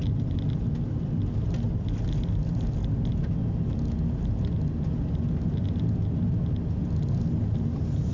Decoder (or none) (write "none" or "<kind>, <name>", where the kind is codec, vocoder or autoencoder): none